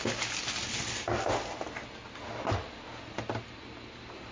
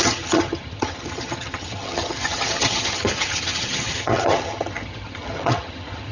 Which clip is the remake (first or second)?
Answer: second